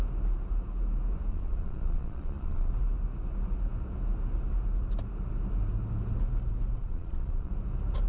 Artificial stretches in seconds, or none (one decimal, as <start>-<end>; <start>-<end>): 1.3-2.7; 6.8-7.5